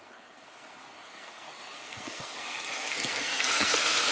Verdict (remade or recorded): remade